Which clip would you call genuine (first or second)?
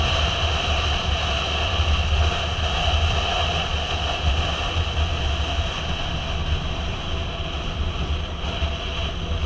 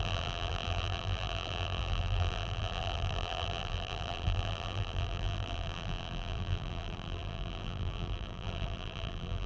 first